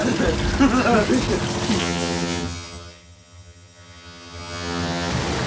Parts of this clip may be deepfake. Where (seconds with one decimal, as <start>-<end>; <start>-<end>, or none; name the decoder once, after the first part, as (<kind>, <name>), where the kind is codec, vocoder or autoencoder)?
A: 1.8-5.1 (vocoder, HiFi-GAN)